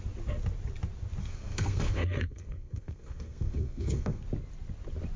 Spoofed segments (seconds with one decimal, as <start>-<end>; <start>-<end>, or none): 1.2-4.2